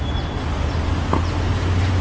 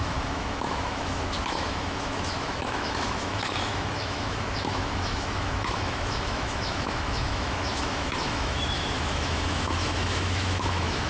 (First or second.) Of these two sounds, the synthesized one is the second